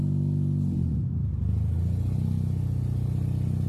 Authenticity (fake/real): real